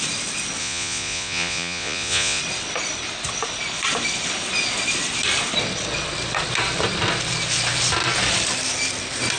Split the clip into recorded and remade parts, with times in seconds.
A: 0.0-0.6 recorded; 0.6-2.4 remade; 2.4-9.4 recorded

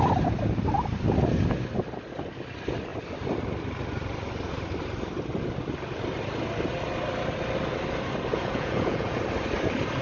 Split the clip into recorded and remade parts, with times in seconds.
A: 0.0-8.3 recorded; 8.3-9.2 remade; 9.2-10.0 recorded

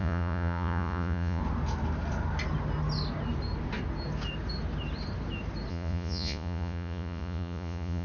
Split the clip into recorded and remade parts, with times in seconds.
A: 0.0-1.4 remade; 1.4-5.7 recorded; 5.7-8.0 remade